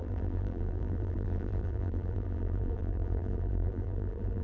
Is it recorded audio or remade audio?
remade